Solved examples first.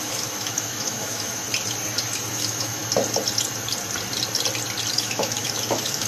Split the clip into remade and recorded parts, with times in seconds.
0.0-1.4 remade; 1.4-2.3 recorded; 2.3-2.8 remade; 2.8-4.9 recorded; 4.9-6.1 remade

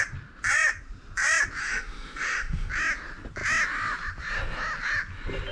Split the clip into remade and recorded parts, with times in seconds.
0.0-1.6 recorded; 1.6-2.7 remade; 2.7-5.5 recorded

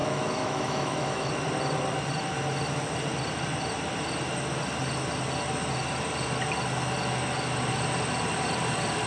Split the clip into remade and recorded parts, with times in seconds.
0.0-1.3 remade; 1.3-9.1 recorded

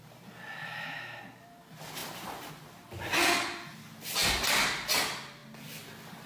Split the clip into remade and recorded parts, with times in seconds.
0.0-0.6 recorded; 0.6-1.2 remade; 1.2-6.3 recorded

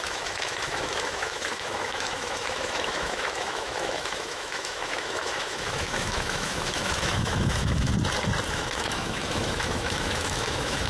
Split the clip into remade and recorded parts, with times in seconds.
0.0-7.9 remade; 7.9-8.5 recorded; 8.5-10.9 remade